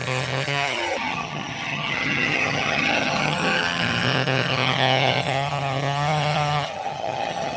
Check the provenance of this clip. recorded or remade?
remade